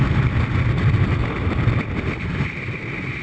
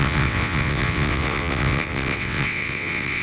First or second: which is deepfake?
second